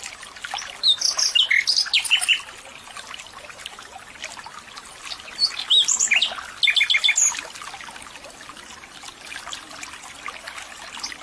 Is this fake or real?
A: real